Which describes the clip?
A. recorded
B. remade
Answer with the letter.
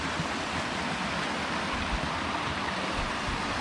A